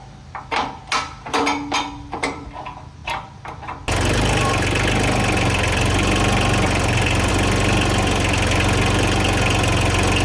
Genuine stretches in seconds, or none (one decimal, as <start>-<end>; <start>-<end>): 0.0-10.2